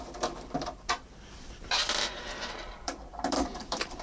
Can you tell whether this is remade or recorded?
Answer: remade